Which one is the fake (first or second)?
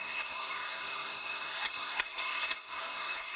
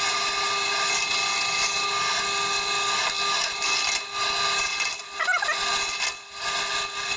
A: first